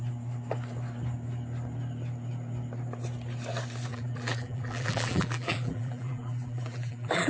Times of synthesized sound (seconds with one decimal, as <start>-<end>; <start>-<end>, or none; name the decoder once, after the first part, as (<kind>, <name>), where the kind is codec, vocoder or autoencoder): 3.9-7.3 (vocoder, BigVGAN v2)